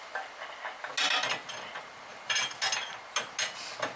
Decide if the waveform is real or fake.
real